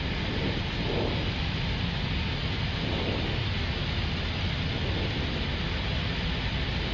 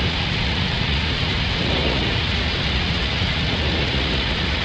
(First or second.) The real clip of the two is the first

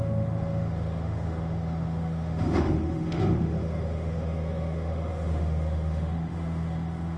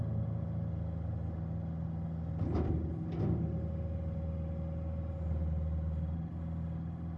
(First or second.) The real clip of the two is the second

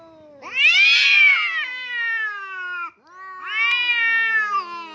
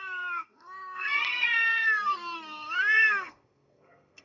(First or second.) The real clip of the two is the first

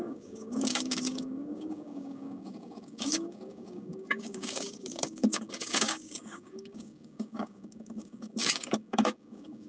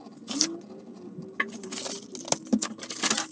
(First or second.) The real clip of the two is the second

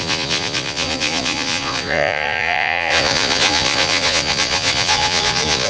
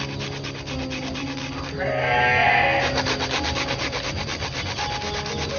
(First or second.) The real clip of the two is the second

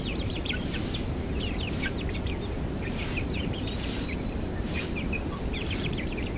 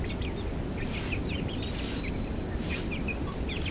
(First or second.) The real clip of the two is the second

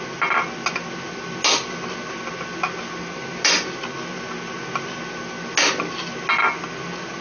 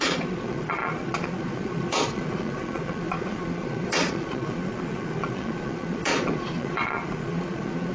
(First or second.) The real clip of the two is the first